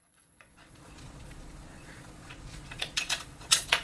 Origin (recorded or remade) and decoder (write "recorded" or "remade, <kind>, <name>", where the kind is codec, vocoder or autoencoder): remade, vocoder, Vocos